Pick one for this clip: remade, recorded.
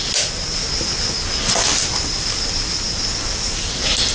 recorded